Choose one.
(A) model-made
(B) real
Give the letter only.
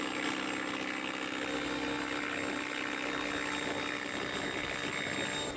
B